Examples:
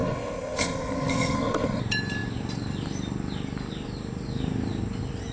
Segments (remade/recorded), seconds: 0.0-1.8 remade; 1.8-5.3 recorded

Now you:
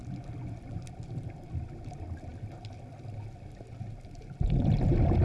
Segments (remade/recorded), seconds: 0.0-5.2 recorded

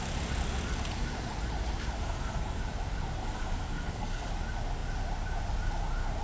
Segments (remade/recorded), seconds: 0.0-2.0 recorded; 2.0-2.6 remade; 2.6-3.2 recorded; 3.2-4.3 remade; 4.3-6.2 recorded

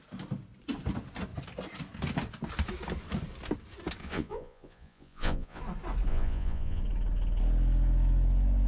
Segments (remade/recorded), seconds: 0.0-4.0 recorded; 4.0-5.6 remade; 5.6-6.1 recorded; 6.1-6.8 remade; 6.8-8.7 recorded

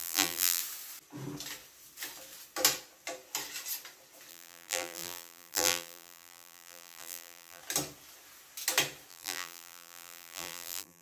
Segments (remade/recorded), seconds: 0.0-0.6 remade; 0.6-4.3 recorded; 4.3-7.6 remade; 7.6-9.1 recorded; 9.1-11.0 remade

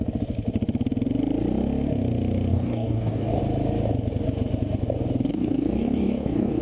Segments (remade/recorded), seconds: 0.0-2.5 recorded; 2.5-3.4 remade; 3.4-5.3 recorded; 5.3-6.6 remade

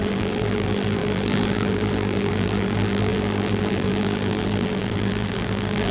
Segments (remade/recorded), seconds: 0.0-5.9 remade

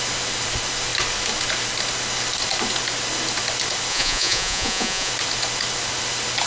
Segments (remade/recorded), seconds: 0.0-3.9 recorded; 3.9-5.1 remade; 5.1-6.5 recorded